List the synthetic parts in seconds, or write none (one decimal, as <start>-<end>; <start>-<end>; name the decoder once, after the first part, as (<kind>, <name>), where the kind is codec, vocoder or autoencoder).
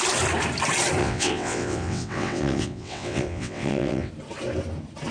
1.0-4.1 (vocoder, WaveNeXt)